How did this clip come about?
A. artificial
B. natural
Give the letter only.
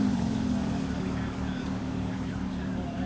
A